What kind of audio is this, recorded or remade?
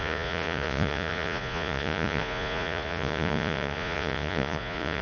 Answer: remade